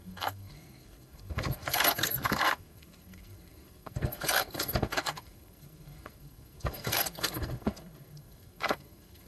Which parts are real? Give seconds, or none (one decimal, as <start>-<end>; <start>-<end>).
none